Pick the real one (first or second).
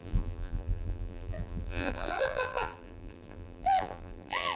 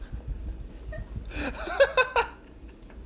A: second